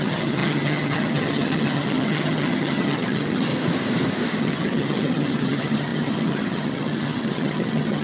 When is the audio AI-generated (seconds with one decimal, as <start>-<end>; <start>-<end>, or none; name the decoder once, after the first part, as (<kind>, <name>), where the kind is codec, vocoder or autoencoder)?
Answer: 0.0-3.5 (vocoder, HiFi-GAN); 4.4-8.0